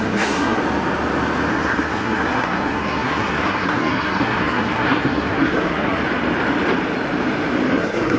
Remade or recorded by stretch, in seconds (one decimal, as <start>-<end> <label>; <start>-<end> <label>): 0.0-0.6 remade; 0.6-1.5 recorded; 1.5-6.0 remade; 6.0-7.7 recorded; 7.7-8.2 remade